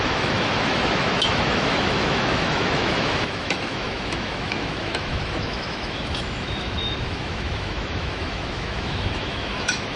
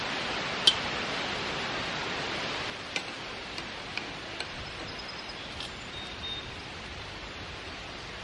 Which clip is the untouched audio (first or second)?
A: second